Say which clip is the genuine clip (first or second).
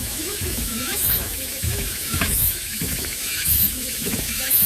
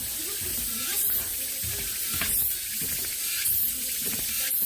second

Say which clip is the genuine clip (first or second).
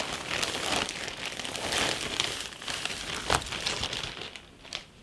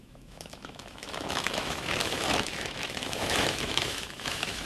first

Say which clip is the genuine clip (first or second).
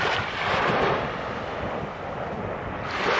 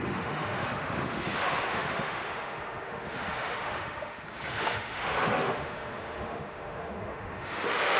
first